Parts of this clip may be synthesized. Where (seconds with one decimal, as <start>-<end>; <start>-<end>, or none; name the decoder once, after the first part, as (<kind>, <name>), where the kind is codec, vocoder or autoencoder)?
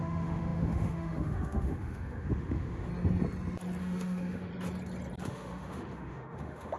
0.0-2.9 (autoencoder, DAC-VAE); 3.8-4.5; 5.2-6.8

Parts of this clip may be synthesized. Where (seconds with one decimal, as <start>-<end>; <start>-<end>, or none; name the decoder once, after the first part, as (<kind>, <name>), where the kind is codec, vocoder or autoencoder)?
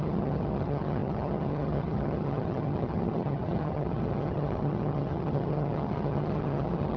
0.0-7.0 (vocoder, HiFi-GAN)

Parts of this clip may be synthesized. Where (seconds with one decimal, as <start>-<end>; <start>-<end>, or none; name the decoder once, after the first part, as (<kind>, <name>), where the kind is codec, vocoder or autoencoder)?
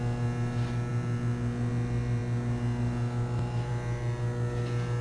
none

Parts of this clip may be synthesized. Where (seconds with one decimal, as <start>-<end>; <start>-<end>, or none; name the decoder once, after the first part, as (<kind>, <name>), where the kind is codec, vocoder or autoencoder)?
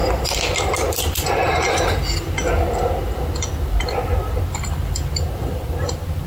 none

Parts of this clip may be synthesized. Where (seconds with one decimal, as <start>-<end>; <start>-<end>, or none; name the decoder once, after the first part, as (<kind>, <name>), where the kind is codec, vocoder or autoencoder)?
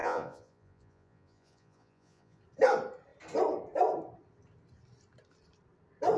0.0-2.4 (vocoder, Vocos)